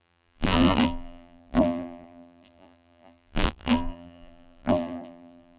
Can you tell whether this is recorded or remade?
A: remade